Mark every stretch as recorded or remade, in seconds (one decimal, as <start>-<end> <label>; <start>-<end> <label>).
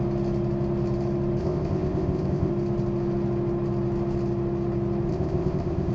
0.0-1.4 recorded; 1.4-2.5 remade; 2.5-5.1 recorded; 5.1-5.9 remade